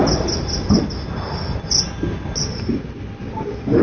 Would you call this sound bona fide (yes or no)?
yes